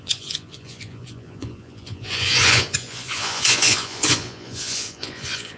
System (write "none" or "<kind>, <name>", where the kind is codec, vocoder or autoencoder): vocoder, Vocos